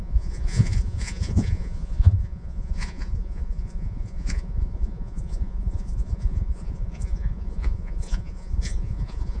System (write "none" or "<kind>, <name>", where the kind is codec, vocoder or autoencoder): vocoder, Vocos